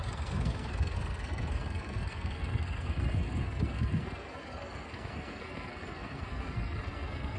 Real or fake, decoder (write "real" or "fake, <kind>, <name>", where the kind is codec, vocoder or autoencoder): fake, codec, SNAC